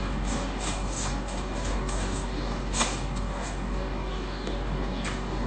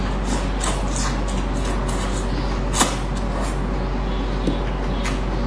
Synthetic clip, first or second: first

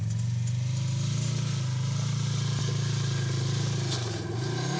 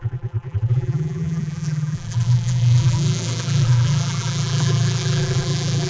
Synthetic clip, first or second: second